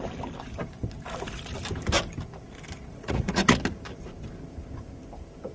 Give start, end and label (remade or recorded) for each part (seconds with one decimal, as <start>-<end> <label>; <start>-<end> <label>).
0.0-2.9 recorded; 2.9-3.6 remade; 3.6-5.5 recorded